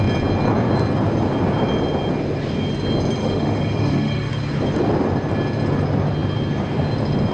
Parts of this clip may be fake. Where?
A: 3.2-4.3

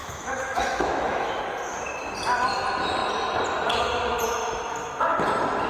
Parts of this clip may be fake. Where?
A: 0.0-1.4

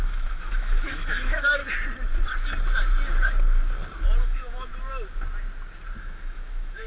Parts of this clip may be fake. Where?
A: 0.0-1.6; 4.2-4.7; 6.0-6.9

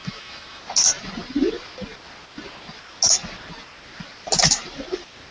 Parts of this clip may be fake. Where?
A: 0.0-0.6

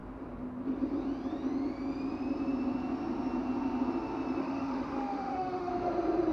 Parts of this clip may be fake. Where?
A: 4.4-5.7

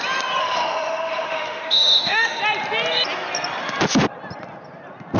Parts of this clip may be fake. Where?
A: 0.4-2.4

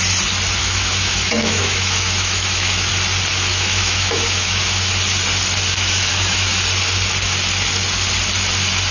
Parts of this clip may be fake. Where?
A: 0.6-2.9; 3.5-4.9; 5.7-6.6

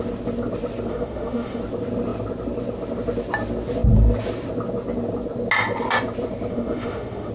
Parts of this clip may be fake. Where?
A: 0.9-1.6; 6.5-7.3